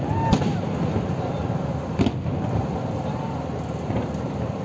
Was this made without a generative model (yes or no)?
yes